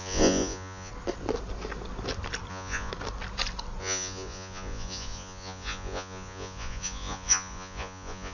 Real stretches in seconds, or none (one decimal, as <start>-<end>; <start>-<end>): 0.9-2.5; 2.9-3.8